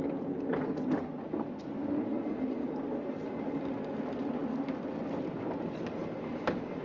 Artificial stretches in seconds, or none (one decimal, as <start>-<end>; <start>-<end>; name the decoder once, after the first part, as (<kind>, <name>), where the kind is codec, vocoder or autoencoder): none